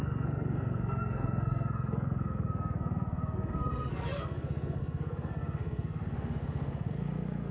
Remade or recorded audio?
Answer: remade